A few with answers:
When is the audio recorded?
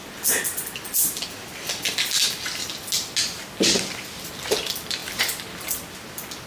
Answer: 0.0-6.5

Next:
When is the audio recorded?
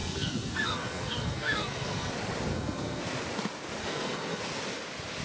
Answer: 2.1-2.5; 3.0-3.8; 4.4-5.2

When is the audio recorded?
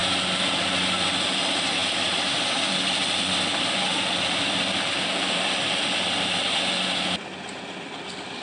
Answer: 0.0-1.8; 6.2-8.4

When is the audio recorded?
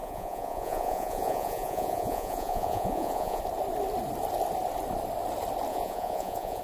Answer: 3.4-5.7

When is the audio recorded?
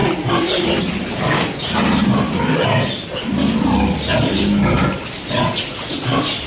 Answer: 0.8-6.5